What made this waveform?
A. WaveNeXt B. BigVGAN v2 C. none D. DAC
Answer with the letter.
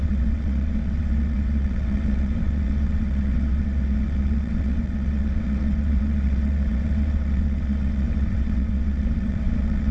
A